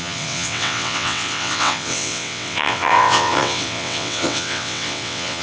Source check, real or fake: fake